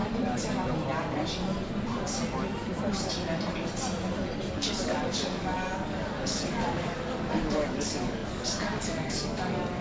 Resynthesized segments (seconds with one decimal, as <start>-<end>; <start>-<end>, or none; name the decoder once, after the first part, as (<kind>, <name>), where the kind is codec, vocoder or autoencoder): 4.5-9.8 (codec, DAC)

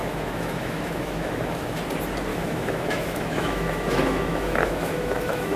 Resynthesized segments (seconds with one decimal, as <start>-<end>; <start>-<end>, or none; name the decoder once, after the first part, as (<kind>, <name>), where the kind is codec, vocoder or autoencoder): 0.0-1.8 (autoencoder, DAC-VAE); 2.3-5.6

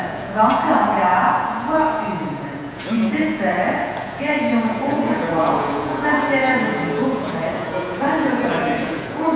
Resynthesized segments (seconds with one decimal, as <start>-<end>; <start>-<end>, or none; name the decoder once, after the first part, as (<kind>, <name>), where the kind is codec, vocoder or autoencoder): 0.0-9.4 (vocoder, Vocos)

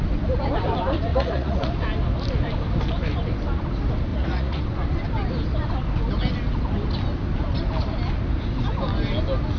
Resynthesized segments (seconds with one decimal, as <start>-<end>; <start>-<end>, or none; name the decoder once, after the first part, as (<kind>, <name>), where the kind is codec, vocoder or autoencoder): 1.1-1.7 (vocoder, Vocos); 4.1-4.6

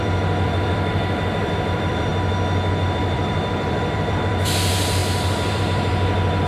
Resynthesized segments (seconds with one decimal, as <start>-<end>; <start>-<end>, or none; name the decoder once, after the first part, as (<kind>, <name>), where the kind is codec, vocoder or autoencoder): 0.0-2.1 (vocoder, BigVGAN v2); 2.9-6.5